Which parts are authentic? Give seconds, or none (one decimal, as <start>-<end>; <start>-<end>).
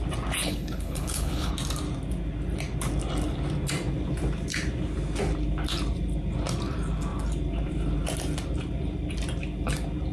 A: 0.0-0.4; 1.5-10.1